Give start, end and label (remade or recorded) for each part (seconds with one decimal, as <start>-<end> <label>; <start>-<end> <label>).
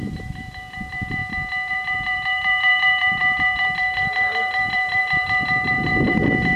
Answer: 0.0-1.2 remade; 1.2-1.7 recorded; 1.7-6.6 remade